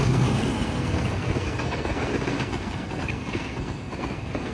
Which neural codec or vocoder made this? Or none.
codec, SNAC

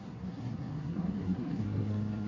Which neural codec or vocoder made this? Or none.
codec, SNAC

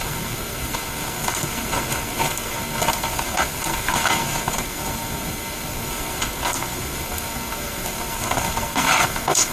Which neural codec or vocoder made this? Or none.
codec, SNAC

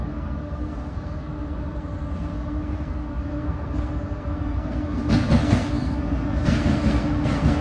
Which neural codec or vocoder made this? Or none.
codec, SNAC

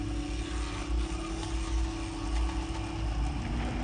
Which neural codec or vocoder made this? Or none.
none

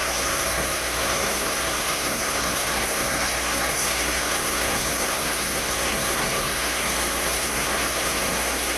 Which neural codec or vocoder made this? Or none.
codec, SNAC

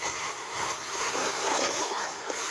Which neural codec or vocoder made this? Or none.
codec, SNAC